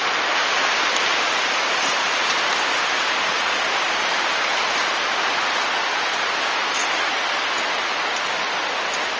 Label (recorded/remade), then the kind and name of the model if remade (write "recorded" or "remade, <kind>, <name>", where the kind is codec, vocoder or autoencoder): recorded